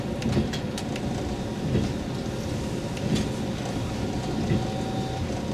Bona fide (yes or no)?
yes